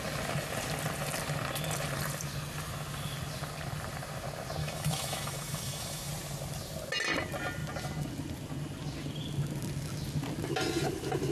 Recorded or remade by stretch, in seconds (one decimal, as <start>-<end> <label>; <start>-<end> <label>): 0.0-4.6 recorded; 4.6-6.1 remade; 6.1-11.3 recorded